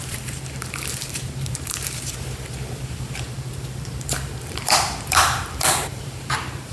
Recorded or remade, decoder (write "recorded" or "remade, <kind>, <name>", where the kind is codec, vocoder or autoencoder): remade, vocoder, BigVGAN v2